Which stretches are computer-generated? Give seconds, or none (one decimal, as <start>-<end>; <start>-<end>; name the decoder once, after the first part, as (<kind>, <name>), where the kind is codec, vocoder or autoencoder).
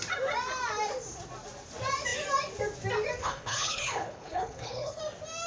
3.2-5.0 (codec, HILCodec)